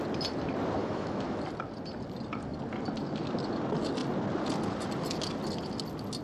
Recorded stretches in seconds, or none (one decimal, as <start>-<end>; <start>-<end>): 0.0-0.8; 1.4-6.2